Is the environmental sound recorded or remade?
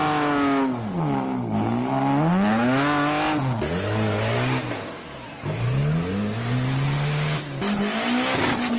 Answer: recorded